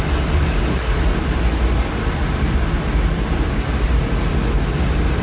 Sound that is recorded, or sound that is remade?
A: recorded